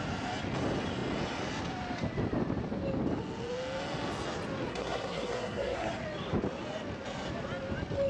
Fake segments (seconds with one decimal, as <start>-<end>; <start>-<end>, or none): 4.7-5.9